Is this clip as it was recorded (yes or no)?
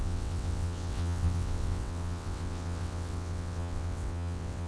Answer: no